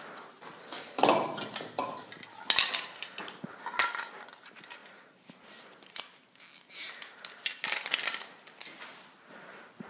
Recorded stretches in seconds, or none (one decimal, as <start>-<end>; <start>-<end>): 0.0-9.9